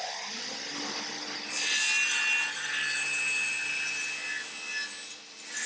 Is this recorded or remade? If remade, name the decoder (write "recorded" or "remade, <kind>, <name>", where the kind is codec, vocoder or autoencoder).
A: recorded